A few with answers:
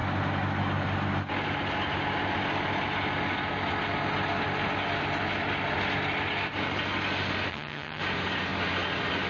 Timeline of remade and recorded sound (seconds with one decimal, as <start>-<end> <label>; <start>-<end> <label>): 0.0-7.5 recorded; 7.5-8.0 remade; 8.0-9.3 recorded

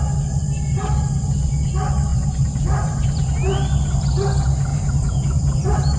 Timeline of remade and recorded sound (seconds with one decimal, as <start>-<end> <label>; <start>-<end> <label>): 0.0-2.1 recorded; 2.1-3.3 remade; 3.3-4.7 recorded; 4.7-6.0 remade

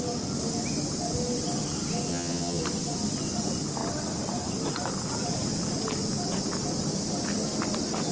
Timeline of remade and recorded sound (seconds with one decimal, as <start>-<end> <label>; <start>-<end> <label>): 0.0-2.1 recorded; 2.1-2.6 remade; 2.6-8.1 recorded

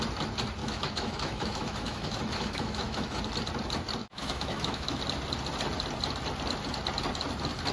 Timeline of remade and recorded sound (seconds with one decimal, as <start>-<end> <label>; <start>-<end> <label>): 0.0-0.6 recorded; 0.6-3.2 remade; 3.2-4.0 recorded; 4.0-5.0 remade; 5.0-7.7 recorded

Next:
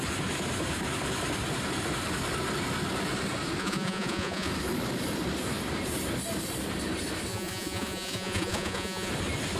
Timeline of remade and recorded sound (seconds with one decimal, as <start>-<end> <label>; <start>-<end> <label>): 0.0-3.6 recorded; 3.6-4.5 remade; 4.5-7.3 recorded; 7.3-9.1 remade; 9.1-9.6 recorded